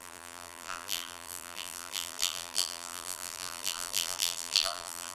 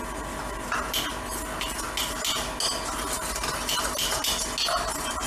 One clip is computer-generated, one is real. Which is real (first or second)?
second